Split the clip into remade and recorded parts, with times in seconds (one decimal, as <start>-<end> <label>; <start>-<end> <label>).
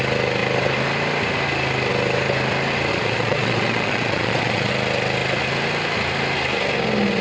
0.0-2.9 recorded; 2.9-4.7 remade; 4.7-7.2 recorded